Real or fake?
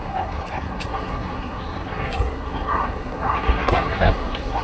fake